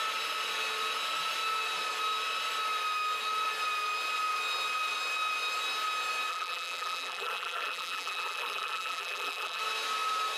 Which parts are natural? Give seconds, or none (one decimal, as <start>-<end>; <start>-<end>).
0.0-6.3; 9.6-10.4